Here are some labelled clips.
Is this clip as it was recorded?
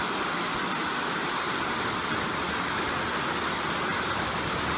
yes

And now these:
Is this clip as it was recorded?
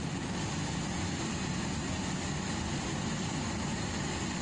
yes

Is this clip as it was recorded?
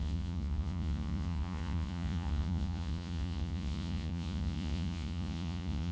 no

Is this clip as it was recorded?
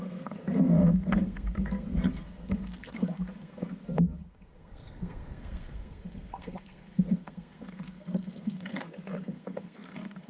no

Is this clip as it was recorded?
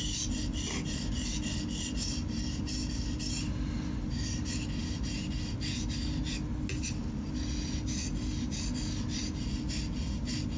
yes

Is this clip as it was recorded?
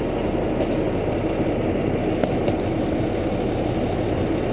yes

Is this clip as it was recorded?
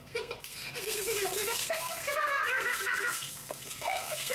no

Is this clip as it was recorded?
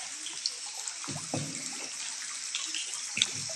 yes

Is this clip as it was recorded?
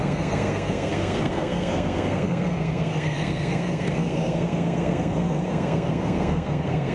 no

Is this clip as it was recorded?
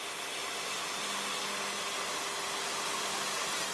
yes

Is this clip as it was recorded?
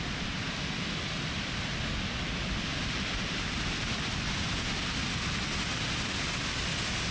yes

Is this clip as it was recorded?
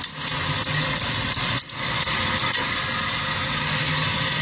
yes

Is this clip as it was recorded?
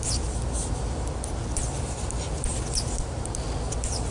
yes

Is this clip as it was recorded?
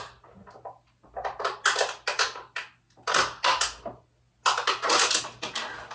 yes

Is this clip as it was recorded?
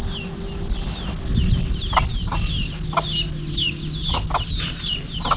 yes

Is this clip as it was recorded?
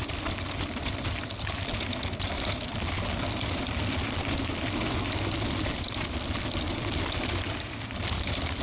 no